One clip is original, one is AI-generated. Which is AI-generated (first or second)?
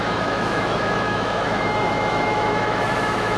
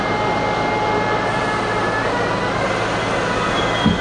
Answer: first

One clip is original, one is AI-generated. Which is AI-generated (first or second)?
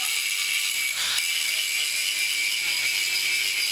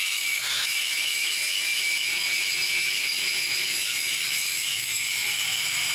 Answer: second